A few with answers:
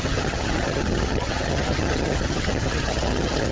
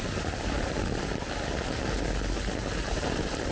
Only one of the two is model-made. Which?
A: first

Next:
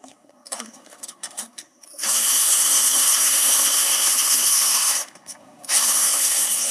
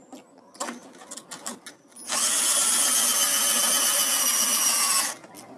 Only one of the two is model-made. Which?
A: first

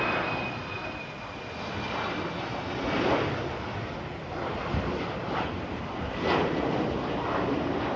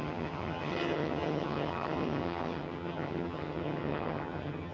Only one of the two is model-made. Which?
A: second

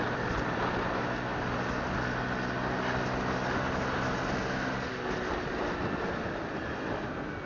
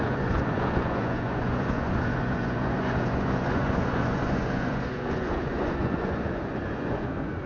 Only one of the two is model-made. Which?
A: second